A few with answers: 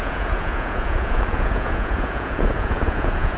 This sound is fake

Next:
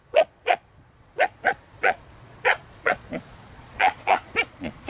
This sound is fake